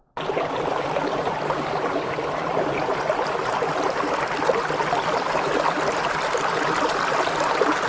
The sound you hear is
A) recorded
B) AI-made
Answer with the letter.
A